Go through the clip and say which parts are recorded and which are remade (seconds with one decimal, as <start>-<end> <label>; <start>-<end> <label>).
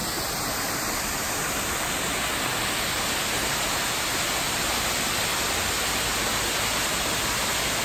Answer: 0.0-7.8 recorded